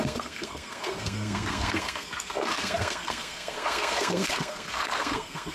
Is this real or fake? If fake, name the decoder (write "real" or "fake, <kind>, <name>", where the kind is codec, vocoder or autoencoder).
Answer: fake, codec, SNAC